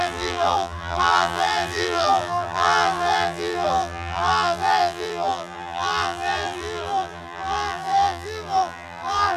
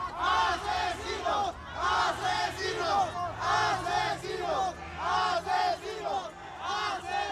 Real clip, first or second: second